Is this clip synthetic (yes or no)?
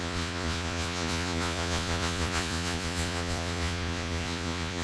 yes